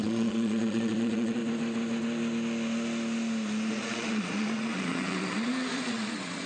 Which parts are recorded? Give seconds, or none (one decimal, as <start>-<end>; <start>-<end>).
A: 1.4-3.7